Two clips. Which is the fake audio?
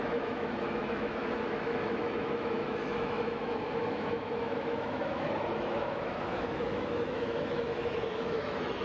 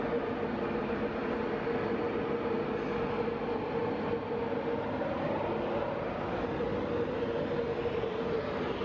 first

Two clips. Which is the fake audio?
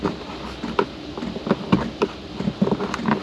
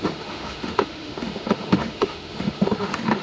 second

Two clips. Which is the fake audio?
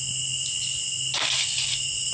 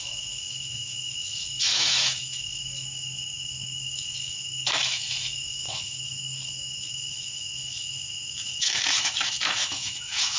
second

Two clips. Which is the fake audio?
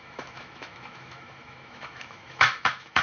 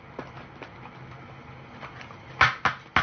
first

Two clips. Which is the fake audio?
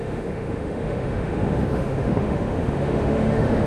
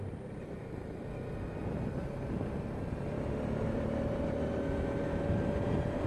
first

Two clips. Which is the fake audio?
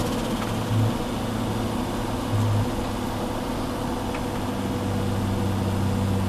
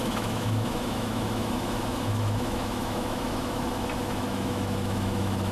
second